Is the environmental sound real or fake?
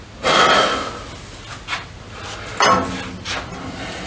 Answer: real